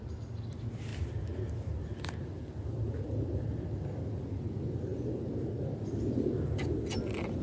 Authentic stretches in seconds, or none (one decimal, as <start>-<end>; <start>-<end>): 0.0-7.4

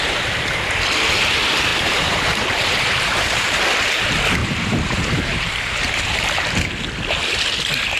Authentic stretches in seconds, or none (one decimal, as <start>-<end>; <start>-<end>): 0.0-1.7; 3.6-4.4; 6.0-8.0

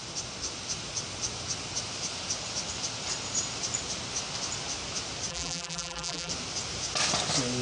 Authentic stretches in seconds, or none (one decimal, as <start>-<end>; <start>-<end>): 0.0-5.3; 6.3-7.6

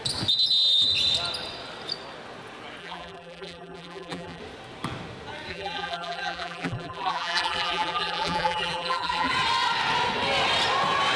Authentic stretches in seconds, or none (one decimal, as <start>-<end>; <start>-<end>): 0.0-2.8; 4.4-5.5; 9.3-11.2

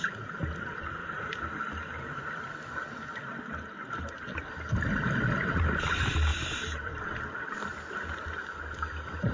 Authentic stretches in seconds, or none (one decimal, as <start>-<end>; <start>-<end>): 0.0-1.0; 3.8-6.3; 7.0-9.3

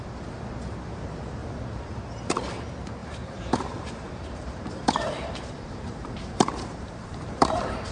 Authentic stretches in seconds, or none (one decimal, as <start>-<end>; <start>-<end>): 0.0-1.4; 2.0-3.0

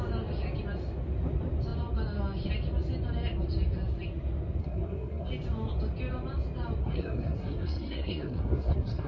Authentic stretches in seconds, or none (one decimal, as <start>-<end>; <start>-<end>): 0.0-4.6; 5.3-6.8

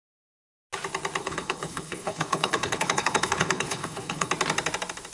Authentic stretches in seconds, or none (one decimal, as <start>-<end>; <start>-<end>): 0.0-1.2; 4.3-5.1